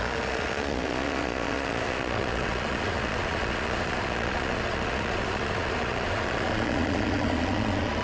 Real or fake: fake